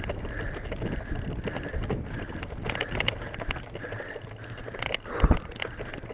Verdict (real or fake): real